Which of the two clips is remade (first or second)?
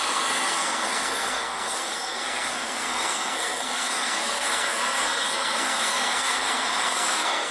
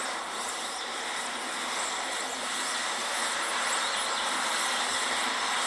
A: first